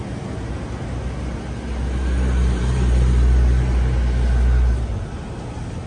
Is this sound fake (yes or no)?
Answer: no